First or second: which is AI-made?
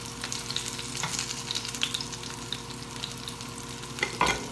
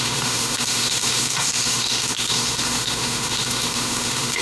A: second